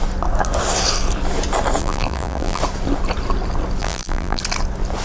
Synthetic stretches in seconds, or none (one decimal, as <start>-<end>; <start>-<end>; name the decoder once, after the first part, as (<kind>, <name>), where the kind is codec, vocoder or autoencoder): 1.8-2.6 (vocoder, BigVGAN v2); 3.8-4.4